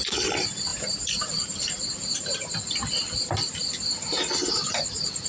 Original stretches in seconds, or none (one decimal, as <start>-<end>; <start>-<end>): 0.0-0.7; 2.6-5.3